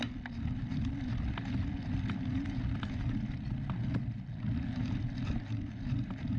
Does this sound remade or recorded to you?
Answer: recorded